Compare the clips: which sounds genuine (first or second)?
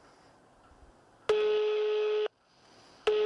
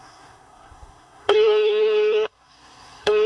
first